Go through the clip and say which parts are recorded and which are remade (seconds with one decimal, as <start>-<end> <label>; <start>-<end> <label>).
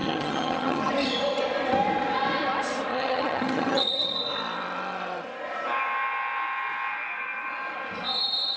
0.0-0.9 remade; 0.9-2.9 recorded; 2.9-4.1 remade; 4.1-8.6 recorded